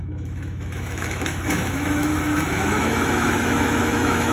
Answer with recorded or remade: remade